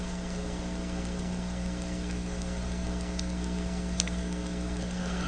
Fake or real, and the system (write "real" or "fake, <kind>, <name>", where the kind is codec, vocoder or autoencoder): fake, codec, SNAC